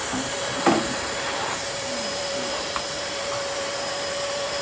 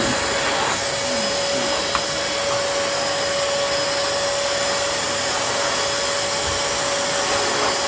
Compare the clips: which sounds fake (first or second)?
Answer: first